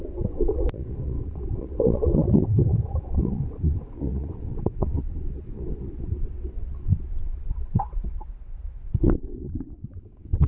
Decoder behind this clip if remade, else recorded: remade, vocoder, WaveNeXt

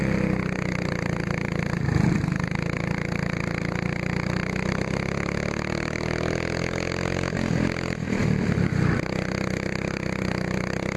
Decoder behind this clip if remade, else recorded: recorded